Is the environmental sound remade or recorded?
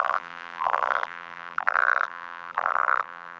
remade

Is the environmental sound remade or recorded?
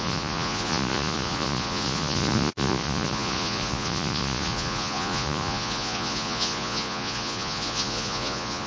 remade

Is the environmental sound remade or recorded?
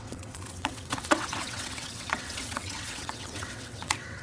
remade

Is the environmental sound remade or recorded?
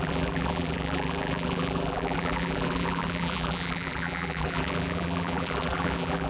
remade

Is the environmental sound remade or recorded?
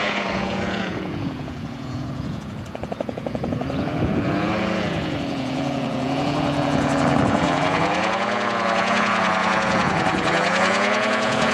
remade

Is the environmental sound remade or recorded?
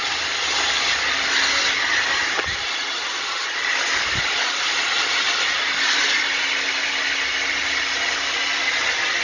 recorded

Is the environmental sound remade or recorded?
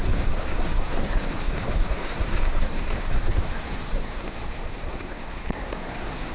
remade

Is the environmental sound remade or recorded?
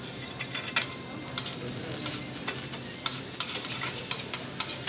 recorded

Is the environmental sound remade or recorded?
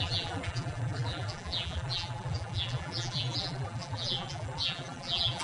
remade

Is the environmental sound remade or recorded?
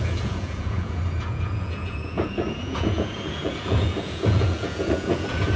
remade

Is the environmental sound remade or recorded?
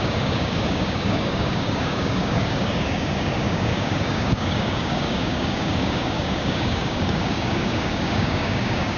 remade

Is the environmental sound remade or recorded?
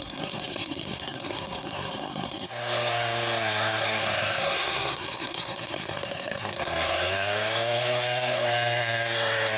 remade